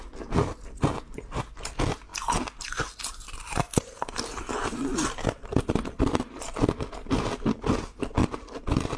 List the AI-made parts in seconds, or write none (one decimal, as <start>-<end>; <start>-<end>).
none